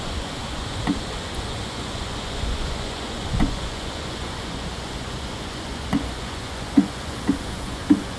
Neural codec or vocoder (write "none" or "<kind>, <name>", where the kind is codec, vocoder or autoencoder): vocoder, Vocos